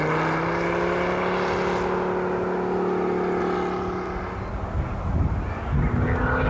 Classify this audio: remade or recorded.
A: recorded